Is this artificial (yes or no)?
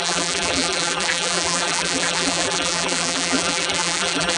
yes